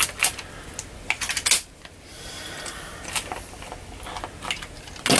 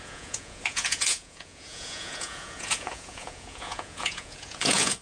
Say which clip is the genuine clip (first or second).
first